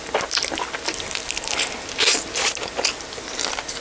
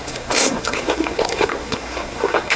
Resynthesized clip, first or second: second